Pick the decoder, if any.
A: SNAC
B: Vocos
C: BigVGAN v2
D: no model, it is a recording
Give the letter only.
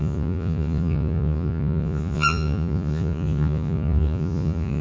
B